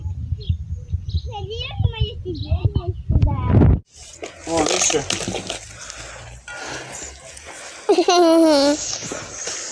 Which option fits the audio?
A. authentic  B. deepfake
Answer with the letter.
A